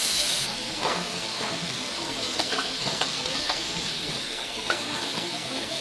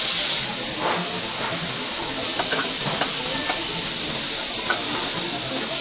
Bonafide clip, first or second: second